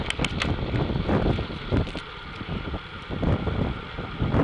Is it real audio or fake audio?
real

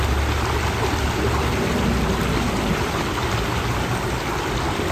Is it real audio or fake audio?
real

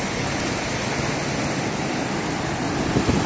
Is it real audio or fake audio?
real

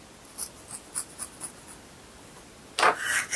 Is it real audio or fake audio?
real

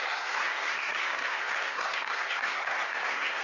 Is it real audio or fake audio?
fake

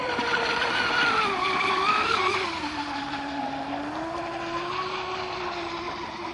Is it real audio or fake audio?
real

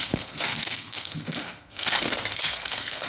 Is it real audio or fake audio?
fake